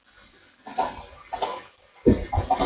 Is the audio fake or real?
real